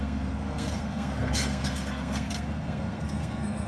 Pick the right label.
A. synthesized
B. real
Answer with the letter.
A